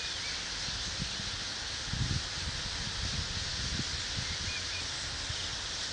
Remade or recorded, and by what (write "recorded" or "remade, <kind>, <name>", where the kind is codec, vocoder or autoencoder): recorded